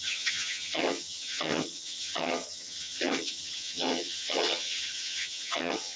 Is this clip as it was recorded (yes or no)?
no